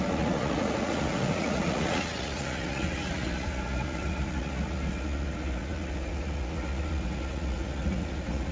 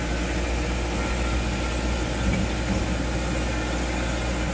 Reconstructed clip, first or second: first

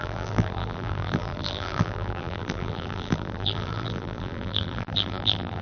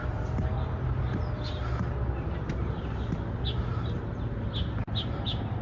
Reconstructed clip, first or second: first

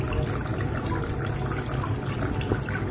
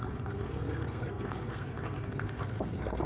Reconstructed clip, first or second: second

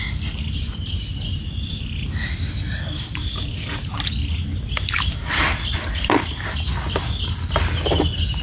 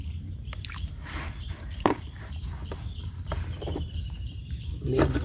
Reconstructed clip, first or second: second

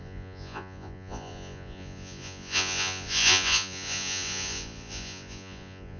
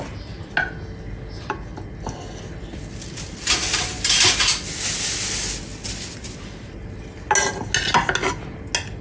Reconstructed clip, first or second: first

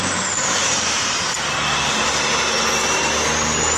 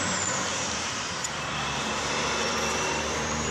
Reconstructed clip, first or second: second